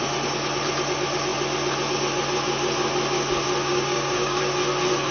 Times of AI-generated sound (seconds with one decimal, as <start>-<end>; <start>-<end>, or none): 3.7-4.4